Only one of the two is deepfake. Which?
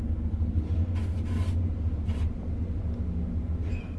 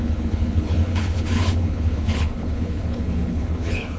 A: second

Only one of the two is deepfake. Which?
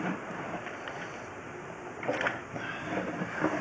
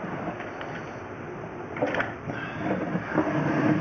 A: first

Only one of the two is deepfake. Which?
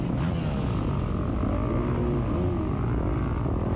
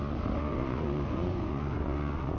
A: second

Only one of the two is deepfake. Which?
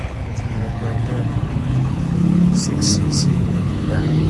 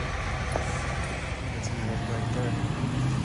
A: first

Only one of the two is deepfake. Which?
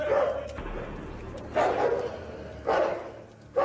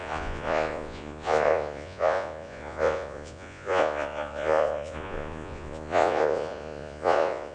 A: second